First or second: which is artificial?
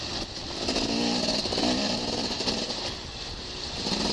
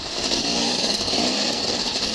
second